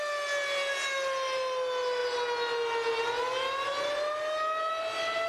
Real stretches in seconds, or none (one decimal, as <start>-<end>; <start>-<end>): 0.0-5.3